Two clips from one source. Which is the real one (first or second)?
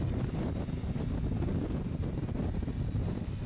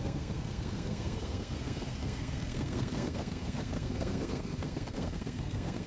first